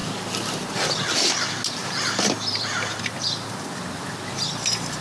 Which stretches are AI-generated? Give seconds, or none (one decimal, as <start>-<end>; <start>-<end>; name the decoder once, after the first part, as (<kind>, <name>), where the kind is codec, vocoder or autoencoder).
1.8-3.6 (vocoder, BigVGAN v2)

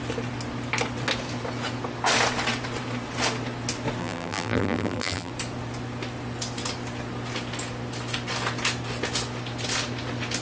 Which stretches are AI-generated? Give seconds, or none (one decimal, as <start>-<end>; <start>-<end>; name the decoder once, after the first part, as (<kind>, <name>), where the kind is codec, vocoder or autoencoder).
4.0-5.3 (vocoder, BigVGAN v2)

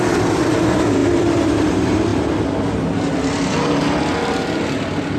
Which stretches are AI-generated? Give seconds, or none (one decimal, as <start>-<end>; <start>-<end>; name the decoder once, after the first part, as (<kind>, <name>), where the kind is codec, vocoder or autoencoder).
0.0-5.2 (vocoder, BigVGAN v2)